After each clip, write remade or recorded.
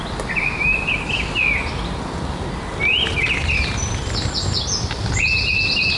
recorded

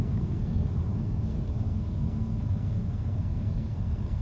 remade